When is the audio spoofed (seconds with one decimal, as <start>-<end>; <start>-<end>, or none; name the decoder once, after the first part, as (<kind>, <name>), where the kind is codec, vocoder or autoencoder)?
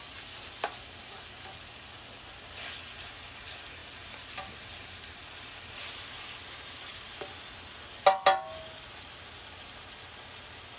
none